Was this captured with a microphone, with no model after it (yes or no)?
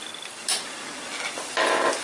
yes